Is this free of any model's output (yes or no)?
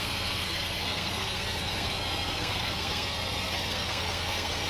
no